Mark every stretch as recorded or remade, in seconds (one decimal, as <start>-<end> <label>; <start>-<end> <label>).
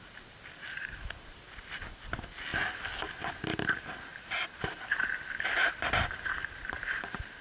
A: 0.0-0.6 recorded; 0.6-2.0 remade; 2.0-4.1 recorded; 4.1-7.4 remade